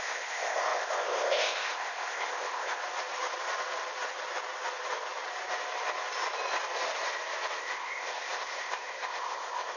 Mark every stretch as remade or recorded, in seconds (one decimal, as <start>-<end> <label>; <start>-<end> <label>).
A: 0.0-2.8 remade; 2.8-7.6 recorded; 7.6-9.8 remade